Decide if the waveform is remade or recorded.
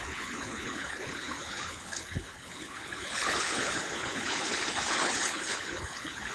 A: remade